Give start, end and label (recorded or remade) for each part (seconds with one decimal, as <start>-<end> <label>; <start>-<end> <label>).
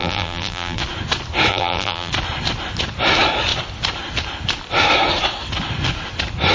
0.0-0.8 remade; 0.8-1.5 recorded; 1.5-2.1 remade; 2.1-6.5 recorded